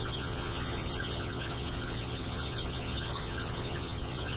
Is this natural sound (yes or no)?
no